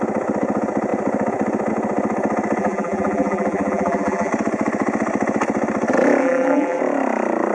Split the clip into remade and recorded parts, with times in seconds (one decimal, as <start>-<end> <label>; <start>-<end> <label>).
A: 0.0-2.6 recorded; 2.6-4.3 remade; 4.3-6.2 recorded; 6.2-6.8 remade; 6.8-7.5 recorded